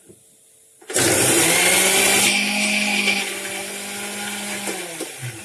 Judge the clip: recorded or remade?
recorded